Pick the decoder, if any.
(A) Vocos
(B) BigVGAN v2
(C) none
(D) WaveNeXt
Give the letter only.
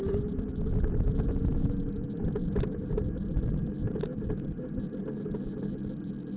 C